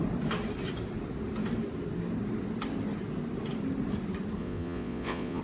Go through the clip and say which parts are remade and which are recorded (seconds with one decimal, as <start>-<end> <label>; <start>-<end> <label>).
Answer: 0.0-4.4 recorded; 4.4-5.4 remade

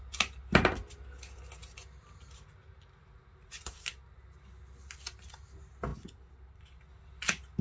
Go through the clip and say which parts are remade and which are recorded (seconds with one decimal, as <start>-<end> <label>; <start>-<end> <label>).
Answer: 0.0-7.6 recorded